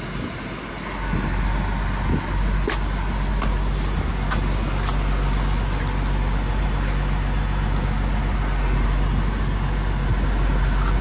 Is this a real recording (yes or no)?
yes